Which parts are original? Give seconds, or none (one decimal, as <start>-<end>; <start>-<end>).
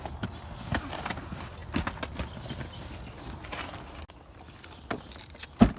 0.0-5.8